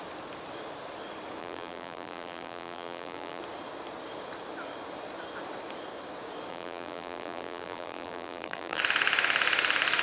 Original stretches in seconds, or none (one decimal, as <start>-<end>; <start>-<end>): 0.0-1.4; 3.4-6.5; 8.8-10.0